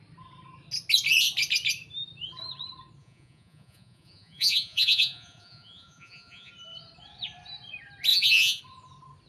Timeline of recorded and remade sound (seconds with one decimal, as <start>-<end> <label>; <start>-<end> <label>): 0.0-3.0 recorded; 3.0-6.5 remade; 6.5-8.1 recorded; 8.1-8.6 remade; 8.6-9.3 recorded